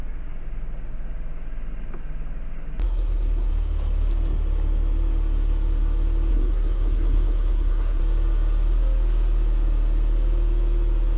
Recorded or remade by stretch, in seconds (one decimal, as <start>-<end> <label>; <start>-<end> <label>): 0.0-2.8 recorded; 2.8-3.5 remade; 3.5-6.3 recorded; 6.3-8.0 remade; 8.0-11.2 recorded